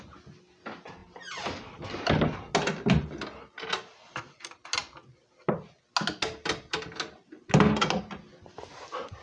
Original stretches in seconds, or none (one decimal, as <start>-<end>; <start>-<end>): 0.0-9.2